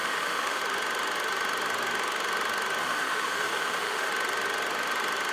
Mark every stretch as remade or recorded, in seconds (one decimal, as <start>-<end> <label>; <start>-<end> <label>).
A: 0.0-0.6 remade; 0.6-2.8 recorded; 2.8-4.1 remade; 4.1-5.3 recorded